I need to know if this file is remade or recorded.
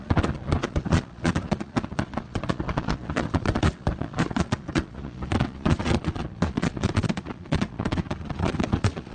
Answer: remade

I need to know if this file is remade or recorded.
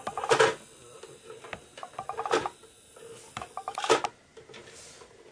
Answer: recorded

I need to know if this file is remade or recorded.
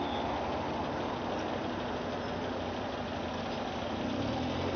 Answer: recorded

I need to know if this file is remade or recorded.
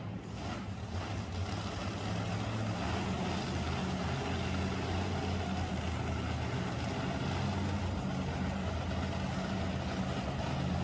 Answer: recorded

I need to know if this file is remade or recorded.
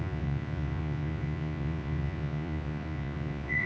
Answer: remade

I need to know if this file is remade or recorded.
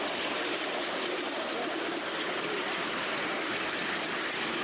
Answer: recorded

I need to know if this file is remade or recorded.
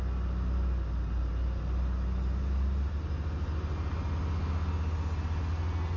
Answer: recorded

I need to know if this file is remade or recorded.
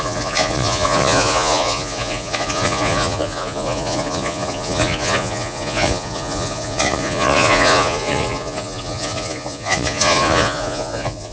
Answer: remade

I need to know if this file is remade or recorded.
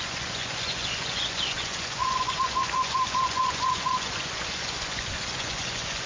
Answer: remade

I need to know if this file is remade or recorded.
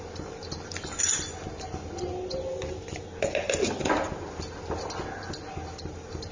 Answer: recorded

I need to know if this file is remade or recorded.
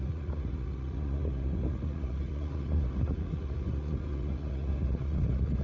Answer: remade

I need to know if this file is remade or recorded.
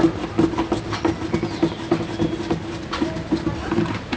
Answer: recorded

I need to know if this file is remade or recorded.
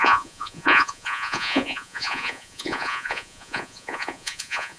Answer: remade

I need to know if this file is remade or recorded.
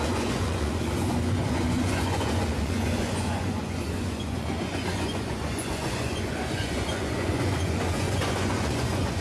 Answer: remade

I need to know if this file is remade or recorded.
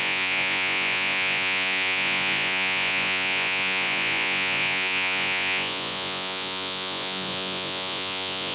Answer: remade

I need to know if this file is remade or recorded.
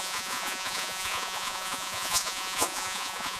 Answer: remade